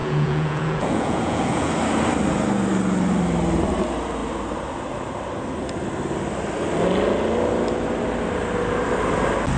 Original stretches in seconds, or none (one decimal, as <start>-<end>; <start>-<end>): 1.7-9.6